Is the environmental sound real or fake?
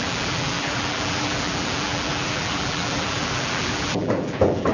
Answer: fake